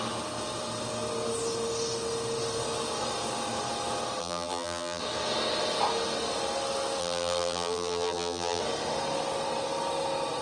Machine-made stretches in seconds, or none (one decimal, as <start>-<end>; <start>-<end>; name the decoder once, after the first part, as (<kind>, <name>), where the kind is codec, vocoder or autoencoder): 4.2-5.0 (vocoder, BigVGAN v2); 7.0-8.6